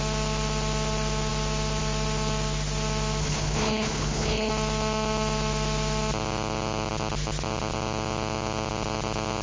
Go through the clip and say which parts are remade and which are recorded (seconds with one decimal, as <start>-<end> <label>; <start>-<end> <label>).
0.0-3.2 recorded; 3.2-4.5 remade; 4.5-9.4 recorded